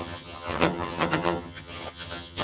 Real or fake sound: fake